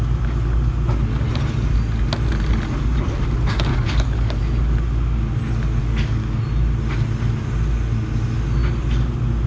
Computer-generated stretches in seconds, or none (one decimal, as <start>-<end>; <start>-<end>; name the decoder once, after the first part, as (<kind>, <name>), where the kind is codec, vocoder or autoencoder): 3.7-4.4 (codec, DAC); 5.8-6.4